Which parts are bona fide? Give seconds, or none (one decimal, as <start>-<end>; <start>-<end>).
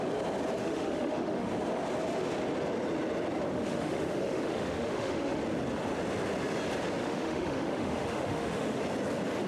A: 0.0-0.6; 1.5-3.5; 5.4-7.0; 8.8-9.5